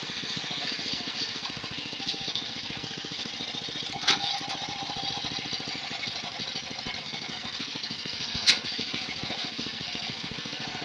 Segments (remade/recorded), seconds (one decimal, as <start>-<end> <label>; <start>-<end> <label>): 0.0-3.3 remade; 3.3-3.9 recorded; 3.9-4.3 remade; 4.3-7.0 recorded; 7.0-10.8 remade